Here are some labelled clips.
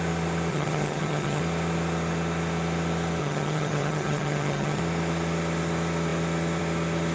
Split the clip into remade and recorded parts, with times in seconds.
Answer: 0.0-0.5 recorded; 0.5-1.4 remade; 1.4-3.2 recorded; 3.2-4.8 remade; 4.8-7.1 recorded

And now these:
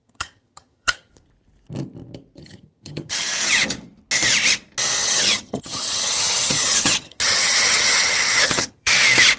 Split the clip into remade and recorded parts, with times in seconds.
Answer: 0.0-1.1 remade; 1.1-2.4 recorded; 2.4-3.3 remade; 3.3-5.0 recorded; 5.0-8.9 remade; 8.9-9.4 recorded

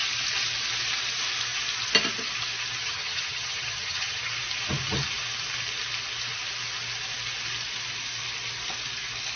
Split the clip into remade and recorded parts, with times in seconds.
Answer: 0.0-2.8 recorded; 2.8-4.3 remade; 4.3-9.4 recorded